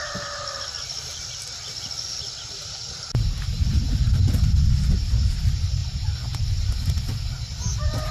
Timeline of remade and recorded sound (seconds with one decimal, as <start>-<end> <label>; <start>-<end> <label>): 0.0-8.1 recorded